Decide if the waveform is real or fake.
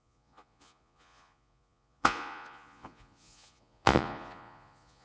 fake